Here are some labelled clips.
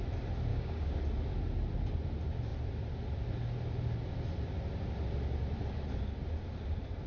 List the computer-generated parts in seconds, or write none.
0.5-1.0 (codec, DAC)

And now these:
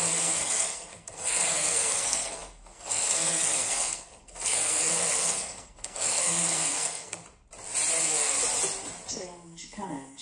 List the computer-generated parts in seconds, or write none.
0.0-7.2 (codec, SNAC); 8.0-8.4; 9.1-10.2

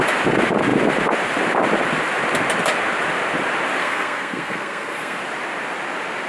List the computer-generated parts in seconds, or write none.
3.8-5.2 (codec, SNAC)

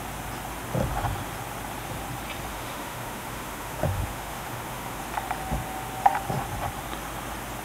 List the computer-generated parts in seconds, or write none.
2.5-5.0 (autoencoder, DAC-VAE)

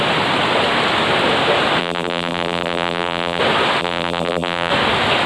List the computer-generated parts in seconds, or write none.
1.8-3.4 (vocoder, BigVGAN v2); 3.8-4.7